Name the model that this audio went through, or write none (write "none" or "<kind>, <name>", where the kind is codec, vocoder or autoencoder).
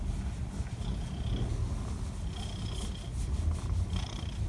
none